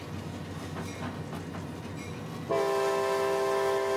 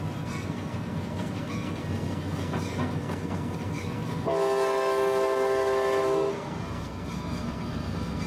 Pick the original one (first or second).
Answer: first